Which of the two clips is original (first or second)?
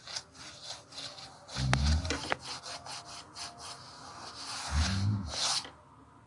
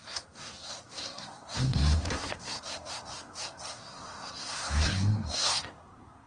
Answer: first